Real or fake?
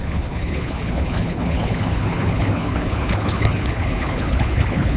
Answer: fake